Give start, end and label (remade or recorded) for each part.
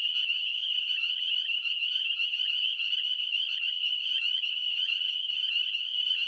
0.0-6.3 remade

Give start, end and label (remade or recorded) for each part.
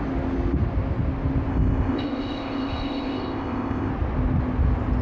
0.0-1.5 recorded; 1.5-3.9 remade; 3.9-5.0 recorded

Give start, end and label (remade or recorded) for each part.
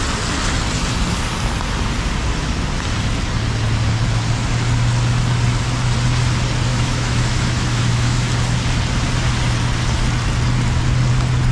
0.0-6.7 recorded; 6.7-8.3 remade; 8.3-11.5 recorded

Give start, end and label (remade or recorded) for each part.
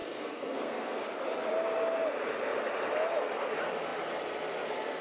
0.0-1.0 remade; 1.0-5.0 recorded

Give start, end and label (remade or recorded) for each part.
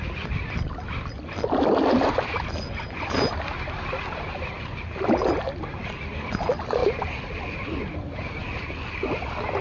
0.0-9.6 recorded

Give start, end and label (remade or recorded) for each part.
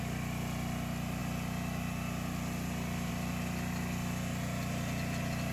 0.0-5.5 recorded